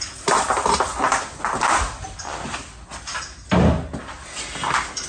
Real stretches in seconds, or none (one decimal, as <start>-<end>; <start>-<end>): 0.0-5.1